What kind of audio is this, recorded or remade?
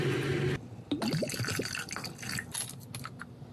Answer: recorded